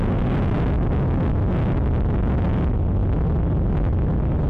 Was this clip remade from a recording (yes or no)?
no